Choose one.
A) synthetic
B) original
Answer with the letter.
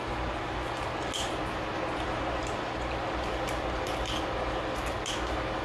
B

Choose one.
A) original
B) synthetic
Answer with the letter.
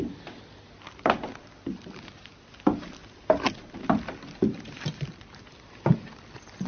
A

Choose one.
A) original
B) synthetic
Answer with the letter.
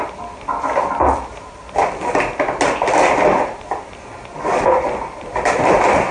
A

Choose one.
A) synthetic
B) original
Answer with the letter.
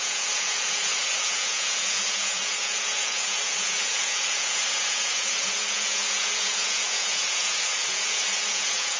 A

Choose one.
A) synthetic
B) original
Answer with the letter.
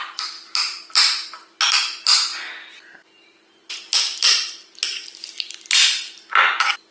B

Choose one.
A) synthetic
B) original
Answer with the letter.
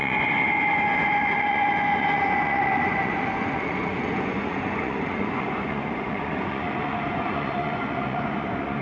A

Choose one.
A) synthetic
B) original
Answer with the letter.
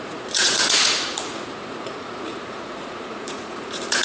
A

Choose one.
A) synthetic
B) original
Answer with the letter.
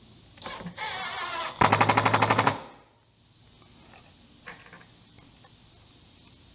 B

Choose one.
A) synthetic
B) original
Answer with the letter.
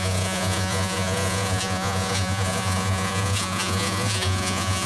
A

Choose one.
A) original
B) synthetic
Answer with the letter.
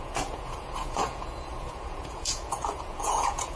B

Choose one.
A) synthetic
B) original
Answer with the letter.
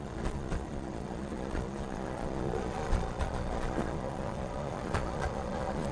A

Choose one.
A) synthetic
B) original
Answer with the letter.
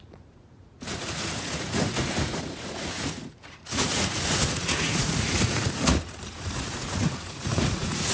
A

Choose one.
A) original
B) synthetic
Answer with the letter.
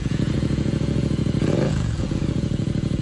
B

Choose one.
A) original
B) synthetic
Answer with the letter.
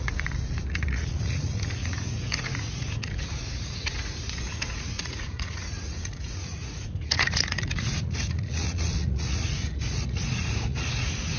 B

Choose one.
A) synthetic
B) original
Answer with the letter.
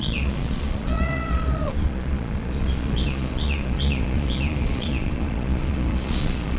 A